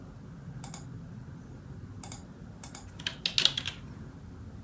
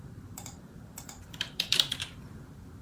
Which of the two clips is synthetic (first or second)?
second